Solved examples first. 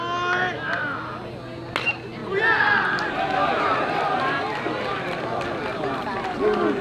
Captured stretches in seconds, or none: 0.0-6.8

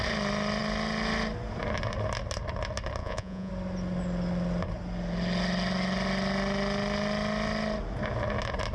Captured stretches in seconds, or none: 0.0-3.0; 3.5-8.7

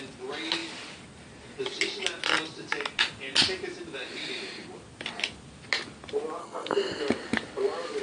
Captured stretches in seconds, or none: 0.0-6.4; 7.0-8.0

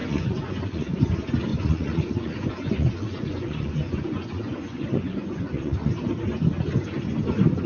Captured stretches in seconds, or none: 1.0-1.5; 5.9-7.7

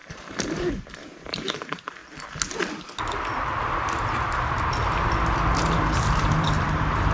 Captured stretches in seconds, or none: 2.0-5.6